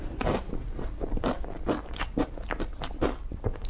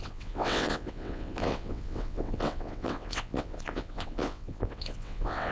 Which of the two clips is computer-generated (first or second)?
second